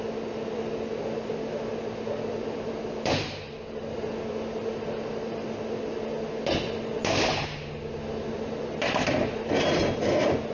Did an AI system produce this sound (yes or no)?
no